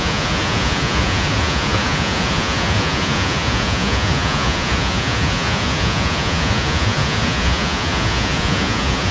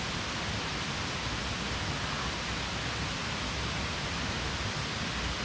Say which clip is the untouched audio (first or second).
second